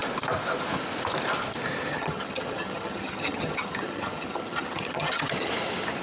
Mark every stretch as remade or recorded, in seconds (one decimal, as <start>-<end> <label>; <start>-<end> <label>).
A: 0.0-1.9 recorded; 1.9-5.5 remade; 5.5-6.0 recorded